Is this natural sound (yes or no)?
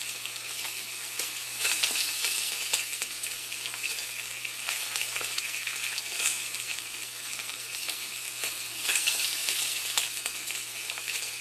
no